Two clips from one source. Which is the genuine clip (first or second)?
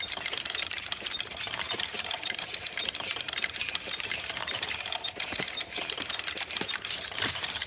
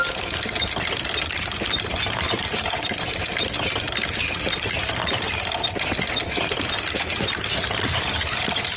second